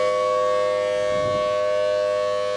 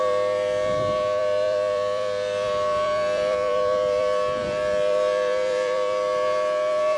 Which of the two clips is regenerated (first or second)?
second